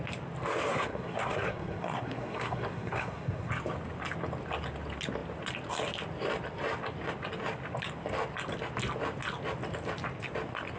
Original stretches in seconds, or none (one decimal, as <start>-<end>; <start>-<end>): 0.0-0.7; 3.5-10.8